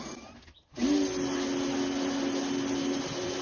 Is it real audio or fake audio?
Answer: real